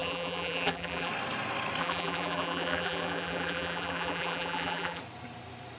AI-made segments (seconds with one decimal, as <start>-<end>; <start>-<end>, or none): 0.0-1.1; 1.8-5.0